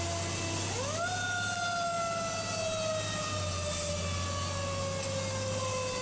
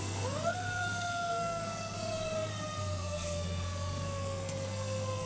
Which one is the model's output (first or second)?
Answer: second